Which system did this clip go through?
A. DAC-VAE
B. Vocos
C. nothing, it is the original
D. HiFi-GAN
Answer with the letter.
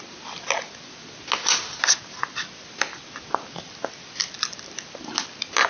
C